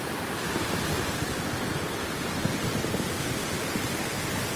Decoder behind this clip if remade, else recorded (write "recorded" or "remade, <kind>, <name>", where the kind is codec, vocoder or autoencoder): recorded